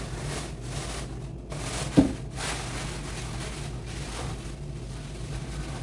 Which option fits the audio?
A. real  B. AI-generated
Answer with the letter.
A